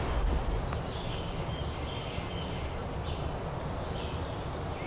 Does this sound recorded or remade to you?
recorded